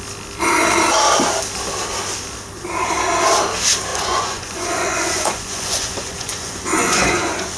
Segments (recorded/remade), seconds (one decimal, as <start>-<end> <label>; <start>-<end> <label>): 0.0-3.9 recorded; 3.9-7.6 remade